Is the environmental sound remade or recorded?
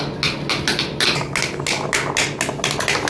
recorded